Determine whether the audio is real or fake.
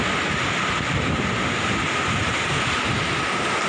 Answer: real